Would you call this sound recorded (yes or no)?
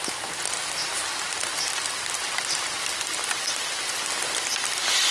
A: yes